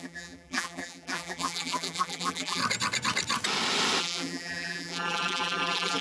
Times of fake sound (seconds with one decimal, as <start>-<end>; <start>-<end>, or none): 0.0-2.6; 4.0-6.0